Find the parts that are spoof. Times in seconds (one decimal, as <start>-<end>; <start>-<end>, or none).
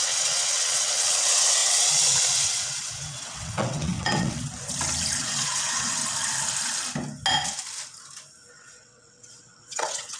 0.0-4.5; 5.2-6.0; 8.5-10.2